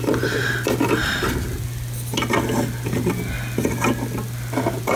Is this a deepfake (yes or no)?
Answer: no